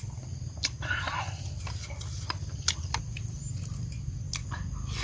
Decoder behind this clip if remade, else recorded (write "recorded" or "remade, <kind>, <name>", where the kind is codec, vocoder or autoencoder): recorded